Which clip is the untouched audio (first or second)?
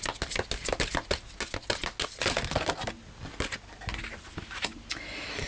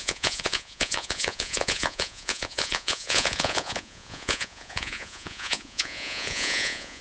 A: first